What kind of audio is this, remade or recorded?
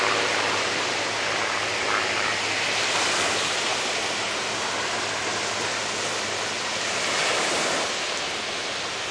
recorded